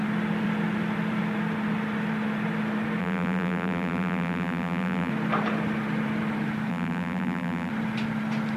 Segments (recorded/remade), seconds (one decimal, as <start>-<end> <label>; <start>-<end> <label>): 0.0-3.0 recorded; 3.0-5.1 remade; 5.1-6.7 recorded; 6.7-7.7 remade; 7.7-8.6 recorded